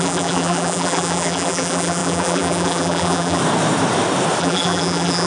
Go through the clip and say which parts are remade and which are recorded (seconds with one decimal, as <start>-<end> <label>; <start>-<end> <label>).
0.0-3.4 remade; 3.4-4.4 recorded; 4.4-5.3 remade